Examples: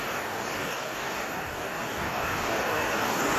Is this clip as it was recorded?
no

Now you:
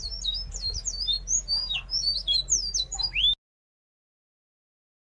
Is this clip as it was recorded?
yes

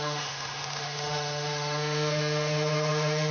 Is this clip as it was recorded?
no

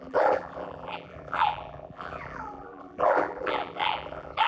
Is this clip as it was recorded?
no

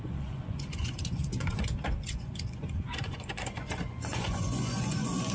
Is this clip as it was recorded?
no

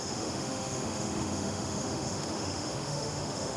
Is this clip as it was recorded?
no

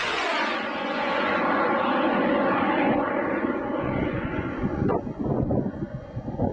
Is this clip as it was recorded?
no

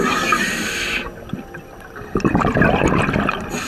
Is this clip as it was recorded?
yes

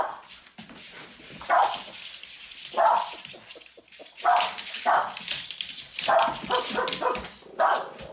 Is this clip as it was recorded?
yes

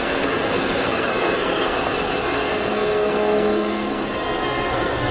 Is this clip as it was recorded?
no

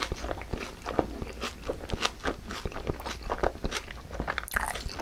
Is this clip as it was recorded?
yes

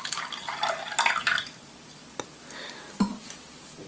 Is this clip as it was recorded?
yes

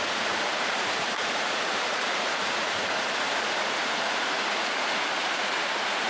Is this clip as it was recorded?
no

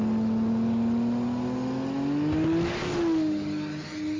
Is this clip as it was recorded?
yes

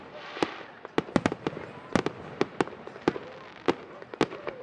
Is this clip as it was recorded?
yes